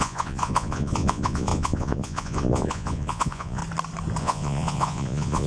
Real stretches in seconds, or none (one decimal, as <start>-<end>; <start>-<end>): 3.6-4.2